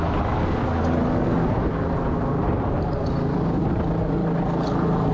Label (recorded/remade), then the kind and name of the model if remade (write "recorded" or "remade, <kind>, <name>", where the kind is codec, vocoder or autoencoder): recorded